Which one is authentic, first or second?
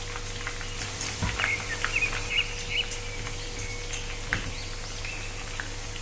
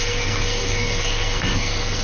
first